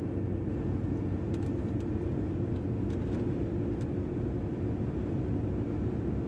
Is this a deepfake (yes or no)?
no